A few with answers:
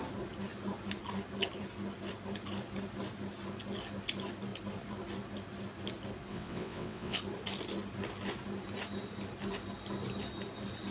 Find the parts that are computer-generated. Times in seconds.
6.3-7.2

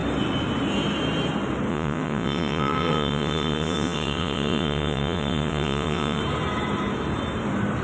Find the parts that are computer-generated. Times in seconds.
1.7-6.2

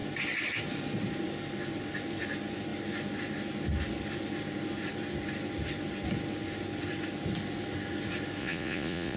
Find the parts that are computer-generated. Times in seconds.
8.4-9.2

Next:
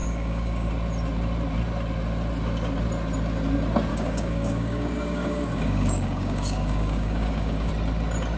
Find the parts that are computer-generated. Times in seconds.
0.0-0.7; 3.9-7.7

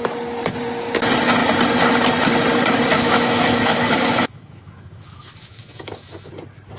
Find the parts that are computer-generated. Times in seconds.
2.9-6.3

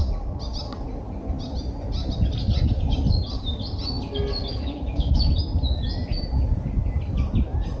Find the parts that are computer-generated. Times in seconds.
4.5-5.3